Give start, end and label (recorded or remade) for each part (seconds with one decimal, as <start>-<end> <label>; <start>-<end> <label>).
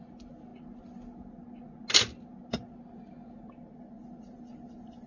0.0-5.1 recorded